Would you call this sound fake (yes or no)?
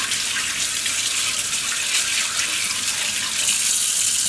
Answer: no